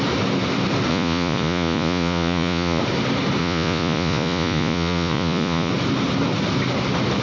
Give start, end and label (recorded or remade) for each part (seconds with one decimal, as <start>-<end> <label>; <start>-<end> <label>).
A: 0.0-0.9 recorded; 0.9-2.8 remade; 2.8-3.4 recorded; 3.4-5.7 remade; 5.7-7.2 recorded